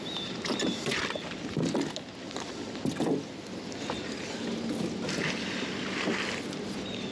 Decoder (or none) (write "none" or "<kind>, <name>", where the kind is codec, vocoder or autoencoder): none